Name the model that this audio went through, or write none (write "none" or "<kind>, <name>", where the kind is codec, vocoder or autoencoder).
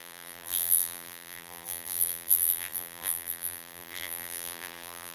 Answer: vocoder, BigVGAN v2